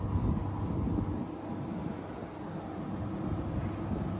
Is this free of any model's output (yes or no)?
yes